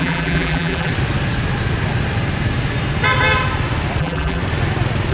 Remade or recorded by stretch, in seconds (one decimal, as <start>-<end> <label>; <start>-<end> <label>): 0.0-0.9 remade; 0.9-4.0 recorded; 4.0-4.4 remade; 4.4-5.1 recorded